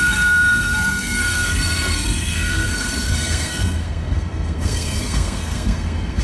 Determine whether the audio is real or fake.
fake